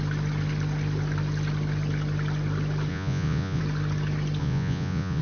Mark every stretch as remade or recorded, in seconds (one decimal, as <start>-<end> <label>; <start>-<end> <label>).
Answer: 0.0-2.9 recorded; 2.9-3.6 remade; 3.6-4.4 recorded; 4.4-5.2 remade

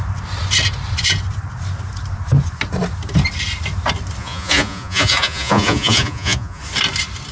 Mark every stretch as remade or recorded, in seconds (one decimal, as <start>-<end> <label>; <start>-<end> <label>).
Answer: 0.0-4.2 recorded; 4.2-6.6 remade; 6.6-7.3 recorded

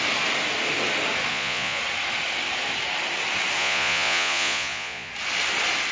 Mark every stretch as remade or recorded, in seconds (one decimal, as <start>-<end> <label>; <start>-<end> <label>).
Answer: 0.0-1.3 recorded; 1.3-1.8 remade; 1.8-3.6 recorded; 3.6-5.1 remade; 5.1-5.9 recorded

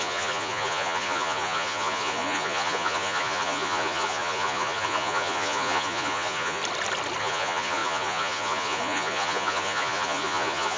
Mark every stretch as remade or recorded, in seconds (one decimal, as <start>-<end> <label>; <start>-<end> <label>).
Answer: 0.0-6.6 remade; 6.6-7.2 recorded; 7.2-10.8 remade

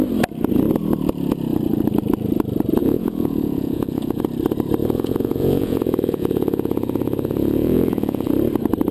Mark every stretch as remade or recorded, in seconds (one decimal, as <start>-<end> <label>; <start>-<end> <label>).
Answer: 0.0-2.8 recorded; 2.8-4.2 remade; 4.2-4.8 recorded; 4.8-8.3 remade; 8.3-8.9 recorded